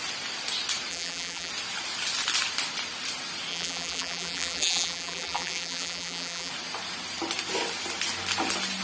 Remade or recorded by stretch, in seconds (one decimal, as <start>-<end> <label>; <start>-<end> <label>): 0.0-0.9 recorded; 0.9-1.5 remade; 1.5-3.5 recorded; 3.5-6.5 remade; 6.5-8.8 recorded